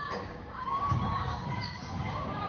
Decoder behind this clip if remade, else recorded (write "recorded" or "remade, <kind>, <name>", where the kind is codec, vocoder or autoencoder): remade, codec, DAC